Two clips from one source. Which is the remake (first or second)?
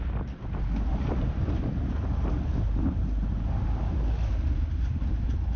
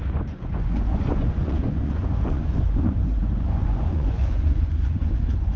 second